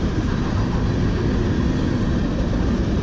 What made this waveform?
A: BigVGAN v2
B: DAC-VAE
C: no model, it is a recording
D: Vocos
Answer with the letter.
C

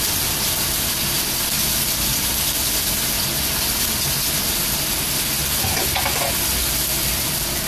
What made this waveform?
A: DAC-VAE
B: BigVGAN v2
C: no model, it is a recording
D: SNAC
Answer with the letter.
C